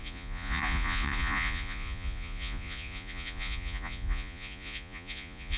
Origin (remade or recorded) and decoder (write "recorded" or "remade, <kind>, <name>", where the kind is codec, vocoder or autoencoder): remade, vocoder, Vocos